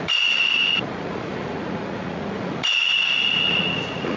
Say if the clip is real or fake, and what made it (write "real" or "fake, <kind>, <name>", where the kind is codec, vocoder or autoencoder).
fake, vocoder, Vocos